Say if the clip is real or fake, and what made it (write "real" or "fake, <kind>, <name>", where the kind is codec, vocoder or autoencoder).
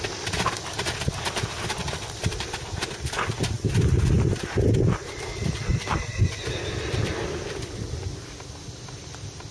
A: real